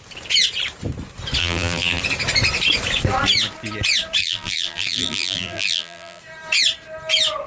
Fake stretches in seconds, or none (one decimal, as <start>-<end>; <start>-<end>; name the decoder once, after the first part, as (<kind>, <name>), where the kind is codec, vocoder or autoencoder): 1.4-2.0 (vocoder, BigVGAN v2); 4.2-6.2